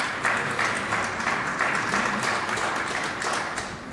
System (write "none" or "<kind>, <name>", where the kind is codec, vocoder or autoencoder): none